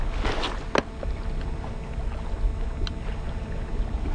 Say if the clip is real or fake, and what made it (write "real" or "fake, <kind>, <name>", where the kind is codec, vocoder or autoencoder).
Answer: real